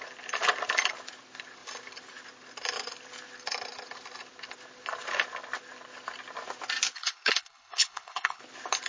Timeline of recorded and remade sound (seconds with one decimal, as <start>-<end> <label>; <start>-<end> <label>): 0.0-6.9 recorded; 6.9-8.4 remade; 8.4-8.9 recorded